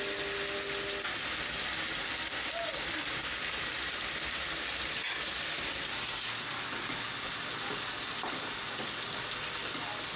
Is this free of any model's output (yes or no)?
yes